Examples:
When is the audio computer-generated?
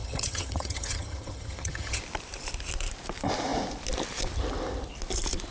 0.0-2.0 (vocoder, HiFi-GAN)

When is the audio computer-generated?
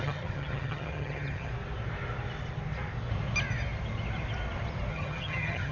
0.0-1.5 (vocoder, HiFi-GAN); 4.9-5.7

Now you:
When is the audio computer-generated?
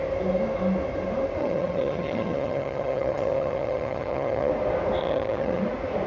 1.4-4.5 (vocoder, HiFi-GAN); 5.0-5.6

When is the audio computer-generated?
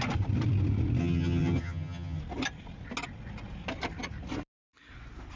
1.0-2.2 (vocoder, HiFi-GAN)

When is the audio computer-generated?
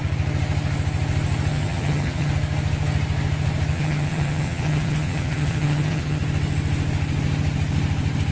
1.5-2.3 (vocoder, HiFi-GAN); 3.7-6.2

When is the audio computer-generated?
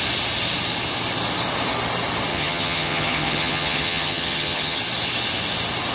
2.3-4.8 (vocoder, HiFi-GAN)